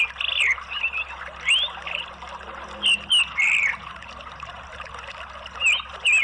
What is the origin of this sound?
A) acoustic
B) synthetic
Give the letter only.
A